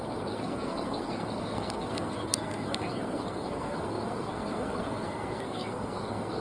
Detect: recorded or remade remade